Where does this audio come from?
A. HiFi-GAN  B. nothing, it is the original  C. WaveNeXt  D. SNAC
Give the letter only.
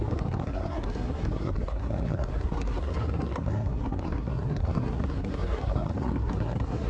D